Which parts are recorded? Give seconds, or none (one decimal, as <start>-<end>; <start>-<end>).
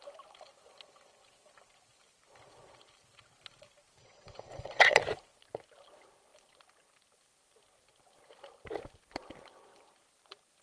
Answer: 0.0-4.0; 5.0-10.6